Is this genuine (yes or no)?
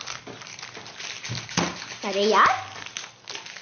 yes